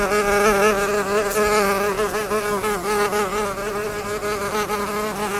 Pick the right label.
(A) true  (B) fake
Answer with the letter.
A